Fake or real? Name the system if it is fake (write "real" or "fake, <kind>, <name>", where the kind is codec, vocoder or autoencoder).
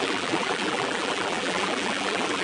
fake, vocoder, BigVGAN v2